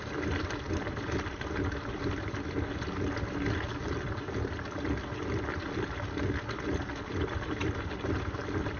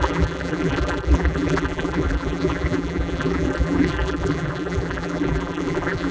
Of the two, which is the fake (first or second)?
second